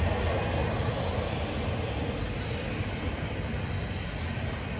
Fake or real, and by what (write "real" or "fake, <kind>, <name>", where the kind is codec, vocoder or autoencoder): real